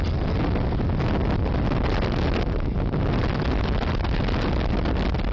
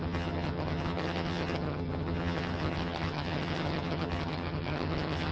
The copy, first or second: second